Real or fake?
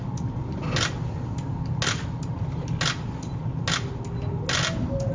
real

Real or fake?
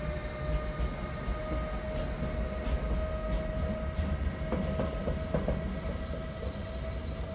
real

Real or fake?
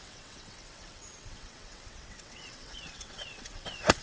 fake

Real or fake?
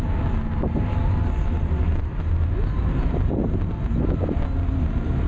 real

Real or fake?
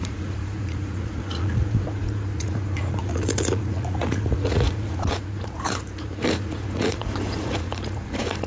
fake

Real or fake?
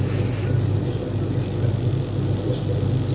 real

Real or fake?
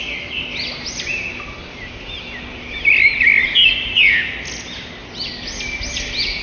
real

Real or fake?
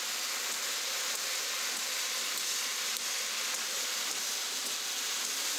real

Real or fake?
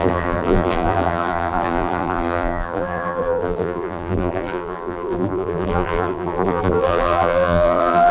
fake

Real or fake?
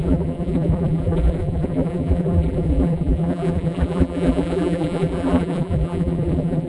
fake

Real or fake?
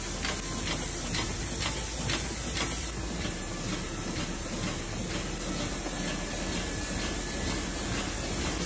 real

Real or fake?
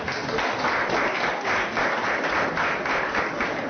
real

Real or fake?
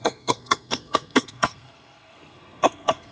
fake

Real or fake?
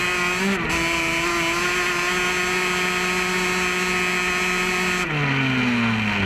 real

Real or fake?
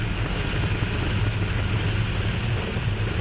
real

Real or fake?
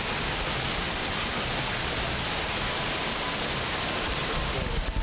real